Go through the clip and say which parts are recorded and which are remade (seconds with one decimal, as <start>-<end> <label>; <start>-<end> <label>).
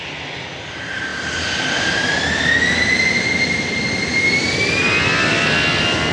0.0-6.1 recorded